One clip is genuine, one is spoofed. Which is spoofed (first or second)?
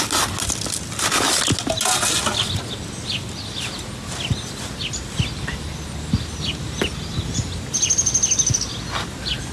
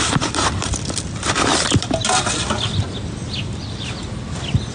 second